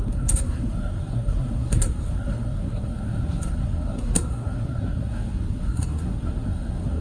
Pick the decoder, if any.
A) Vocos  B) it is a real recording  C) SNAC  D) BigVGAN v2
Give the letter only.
C